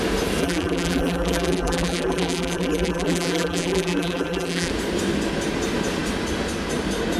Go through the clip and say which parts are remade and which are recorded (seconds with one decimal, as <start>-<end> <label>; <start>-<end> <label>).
0.0-0.4 recorded; 0.4-4.7 remade; 4.7-7.2 recorded